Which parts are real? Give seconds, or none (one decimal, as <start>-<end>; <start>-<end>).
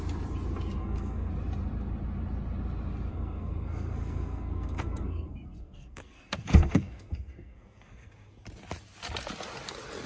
0.0-0.8; 1.3-3.1; 8.3-10.1